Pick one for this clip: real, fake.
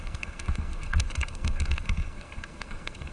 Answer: fake